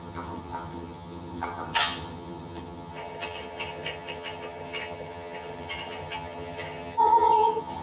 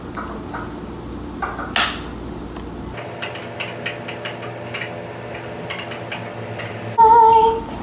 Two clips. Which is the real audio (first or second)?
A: second